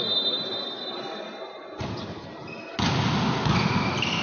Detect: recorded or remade recorded